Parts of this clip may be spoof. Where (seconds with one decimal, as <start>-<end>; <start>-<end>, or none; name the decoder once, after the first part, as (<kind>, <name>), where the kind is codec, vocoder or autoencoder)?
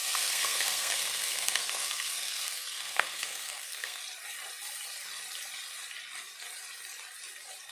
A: 0.0-4.0 (codec, SNAC)